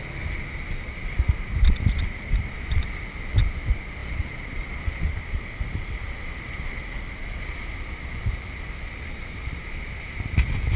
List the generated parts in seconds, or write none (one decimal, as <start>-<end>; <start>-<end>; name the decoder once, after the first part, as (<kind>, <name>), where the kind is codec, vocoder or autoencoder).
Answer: 4.0-5.1 (vocoder, Vocos)